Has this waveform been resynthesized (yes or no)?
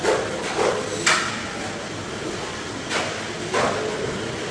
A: no